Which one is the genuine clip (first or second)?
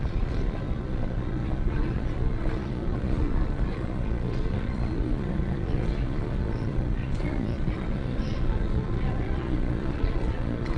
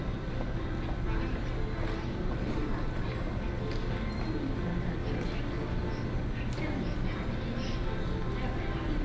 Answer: second